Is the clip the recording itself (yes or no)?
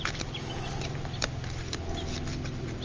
yes